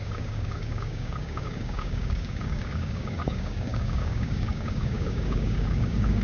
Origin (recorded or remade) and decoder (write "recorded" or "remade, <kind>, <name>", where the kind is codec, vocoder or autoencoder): remade, codec, DAC